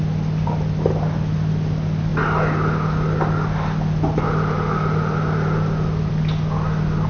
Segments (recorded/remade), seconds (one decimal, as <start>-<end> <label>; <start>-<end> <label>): 0.0-7.1 recorded